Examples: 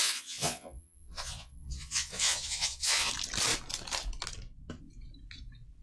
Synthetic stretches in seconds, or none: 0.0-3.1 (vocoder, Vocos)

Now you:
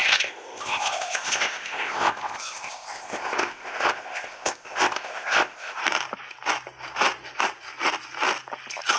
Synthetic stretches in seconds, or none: 0.0-5.8 (codec, ZipCodec)

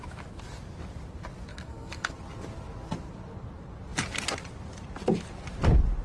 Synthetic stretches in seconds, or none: 1.5-2.1 (codec, DAC)

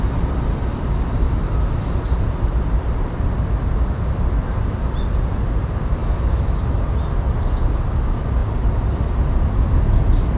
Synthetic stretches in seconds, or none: 6.0-6.6 (autoencoder, DAC-VAE)

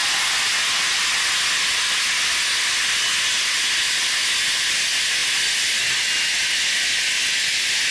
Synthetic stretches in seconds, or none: none